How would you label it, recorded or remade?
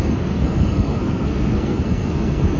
remade